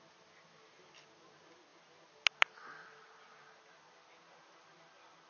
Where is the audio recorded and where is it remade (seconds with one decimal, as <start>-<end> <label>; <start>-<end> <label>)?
0.0-5.3 recorded